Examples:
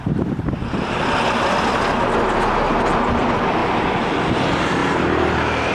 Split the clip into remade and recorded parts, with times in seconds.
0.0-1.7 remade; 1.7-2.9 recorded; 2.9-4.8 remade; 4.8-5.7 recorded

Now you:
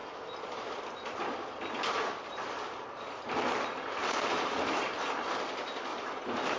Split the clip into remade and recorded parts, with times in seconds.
0.0-4.0 recorded; 4.0-5.4 remade; 5.4-5.9 recorded; 5.9-6.6 remade

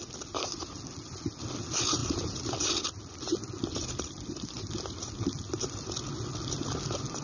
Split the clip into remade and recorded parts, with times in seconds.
0.0-7.2 recorded

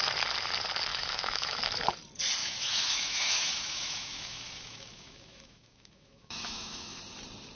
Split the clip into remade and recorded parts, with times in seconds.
0.0-0.9 recorded; 0.9-1.6 remade; 1.6-2.4 recorded; 2.4-7.0 remade; 7.0-7.6 recorded

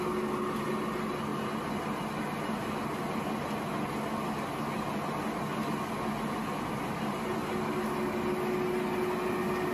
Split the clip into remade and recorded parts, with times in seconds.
0.0-9.7 recorded

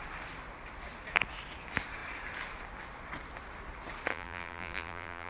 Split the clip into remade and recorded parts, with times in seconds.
0.0-4.1 recorded; 4.1-5.3 remade